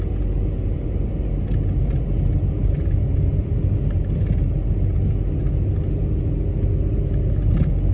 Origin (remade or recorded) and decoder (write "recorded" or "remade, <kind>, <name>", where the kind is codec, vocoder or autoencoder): recorded